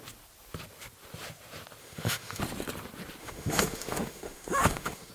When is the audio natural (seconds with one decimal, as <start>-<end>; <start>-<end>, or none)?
0.0-1.8; 2.4-3.2